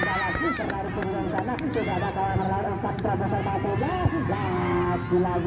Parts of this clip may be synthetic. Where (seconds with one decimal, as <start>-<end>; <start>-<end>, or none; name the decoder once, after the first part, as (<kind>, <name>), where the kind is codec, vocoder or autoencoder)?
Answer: none